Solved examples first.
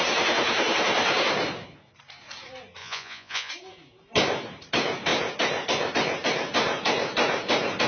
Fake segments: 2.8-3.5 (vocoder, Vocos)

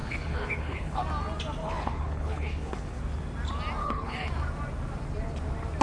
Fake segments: 0.0-1.0 (codec, HILCodec); 1.6-3.0; 3.8-4.3